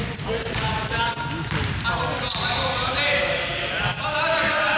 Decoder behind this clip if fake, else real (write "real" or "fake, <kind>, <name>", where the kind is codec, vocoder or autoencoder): real